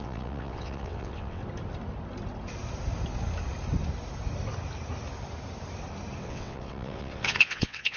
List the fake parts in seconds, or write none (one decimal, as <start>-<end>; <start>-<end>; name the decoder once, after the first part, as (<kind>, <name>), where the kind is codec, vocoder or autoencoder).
0.0-1.4 (vocoder, WaveNeXt); 6.2-8.0